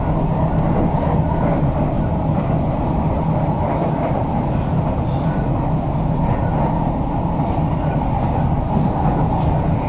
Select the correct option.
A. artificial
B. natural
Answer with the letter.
B